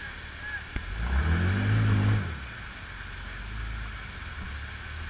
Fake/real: real